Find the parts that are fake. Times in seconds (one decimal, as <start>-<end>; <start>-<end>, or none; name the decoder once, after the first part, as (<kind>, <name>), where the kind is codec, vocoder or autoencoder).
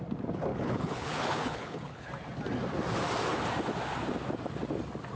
0.5-2.1 (codec, HILCodec)